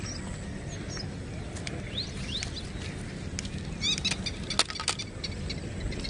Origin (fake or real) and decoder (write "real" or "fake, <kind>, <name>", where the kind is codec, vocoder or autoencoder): real